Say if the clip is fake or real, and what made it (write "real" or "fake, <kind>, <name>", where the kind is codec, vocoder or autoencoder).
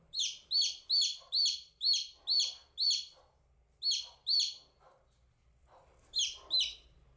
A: real